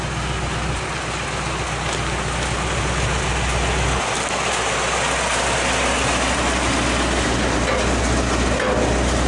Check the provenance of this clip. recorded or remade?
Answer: recorded